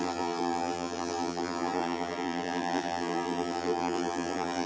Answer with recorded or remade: remade